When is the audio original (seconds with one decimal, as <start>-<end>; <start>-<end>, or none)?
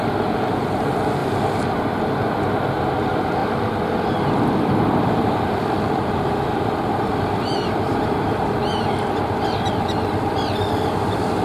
0.0-1.2; 1.8-3.4; 8.6-11.4